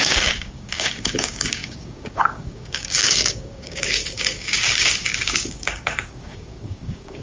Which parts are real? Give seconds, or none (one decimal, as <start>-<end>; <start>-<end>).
none